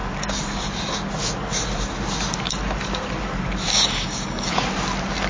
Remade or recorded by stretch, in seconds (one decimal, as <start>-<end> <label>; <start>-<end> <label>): 0.0-3.7 recorded; 3.7-4.5 remade; 4.5-5.3 recorded